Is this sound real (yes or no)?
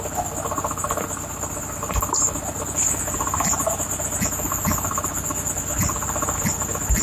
yes